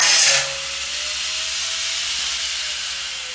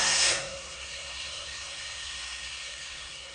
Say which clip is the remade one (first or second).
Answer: second